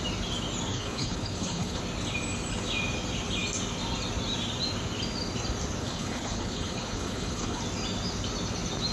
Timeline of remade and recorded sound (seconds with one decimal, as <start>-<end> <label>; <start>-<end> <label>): 0.0-0.7 recorded; 0.7-1.8 remade; 1.8-5.8 recorded; 5.8-7.6 remade; 7.6-8.9 recorded